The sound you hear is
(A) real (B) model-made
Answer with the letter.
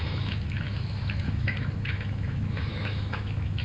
B